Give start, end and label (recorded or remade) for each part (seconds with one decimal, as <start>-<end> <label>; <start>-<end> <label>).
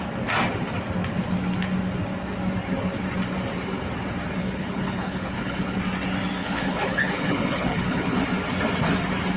0.0-4.4 recorded; 4.4-5.8 remade; 5.8-6.4 recorded; 6.4-8.2 remade; 8.2-9.4 recorded